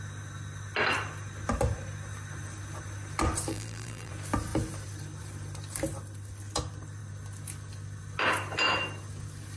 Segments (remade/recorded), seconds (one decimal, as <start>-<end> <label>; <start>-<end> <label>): 0.0-3.5 recorded; 3.5-4.1 remade; 4.1-9.6 recorded